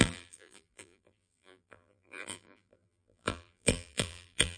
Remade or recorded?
remade